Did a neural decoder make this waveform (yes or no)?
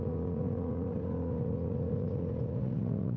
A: yes